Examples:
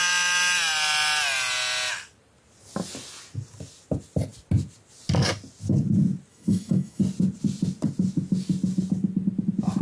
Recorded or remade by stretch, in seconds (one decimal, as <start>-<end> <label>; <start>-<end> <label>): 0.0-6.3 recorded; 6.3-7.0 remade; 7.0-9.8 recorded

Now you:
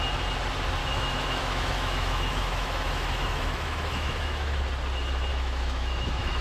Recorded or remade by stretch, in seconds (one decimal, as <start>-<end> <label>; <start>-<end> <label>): 0.0-0.8 recorded; 0.8-4.6 remade; 4.6-5.3 recorded; 5.3-6.4 remade

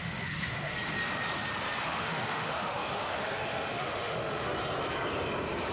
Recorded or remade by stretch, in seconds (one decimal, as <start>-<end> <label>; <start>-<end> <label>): 0.0-0.7 remade; 0.7-1.8 recorded; 1.8-4.6 remade; 4.6-5.7 recorded